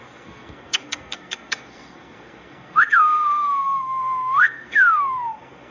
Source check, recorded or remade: remade